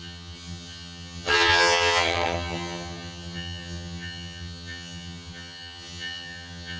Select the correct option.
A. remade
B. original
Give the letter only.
A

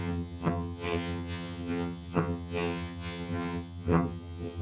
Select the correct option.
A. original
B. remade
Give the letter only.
B